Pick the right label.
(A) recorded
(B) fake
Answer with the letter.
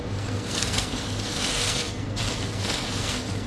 B